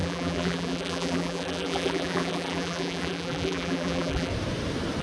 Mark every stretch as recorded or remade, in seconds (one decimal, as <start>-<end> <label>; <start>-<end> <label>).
0.0-4.3 remade; 4.3-5.0 recorded